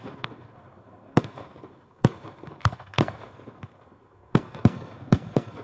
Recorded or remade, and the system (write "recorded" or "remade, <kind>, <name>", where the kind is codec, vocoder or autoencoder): remade, codec, SNAC